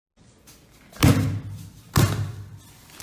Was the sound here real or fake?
real